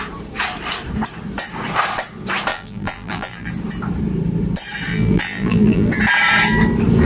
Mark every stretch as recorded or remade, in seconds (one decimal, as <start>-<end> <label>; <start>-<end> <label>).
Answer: 0.0-2.5 recorded; 2.5-3.5 remade; 3.5-4.9 recorded; 4.9-5.9 remade; 5.9-7.0 recorded